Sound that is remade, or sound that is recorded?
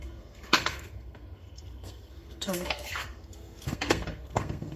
remade